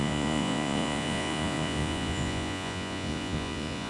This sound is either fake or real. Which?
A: fake